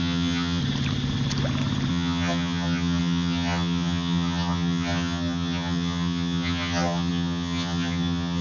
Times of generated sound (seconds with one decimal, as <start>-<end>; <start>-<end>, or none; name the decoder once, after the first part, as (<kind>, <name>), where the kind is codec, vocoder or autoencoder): 0.0-0.6 (vocoder, HiFi-GAN); 1.9-8.4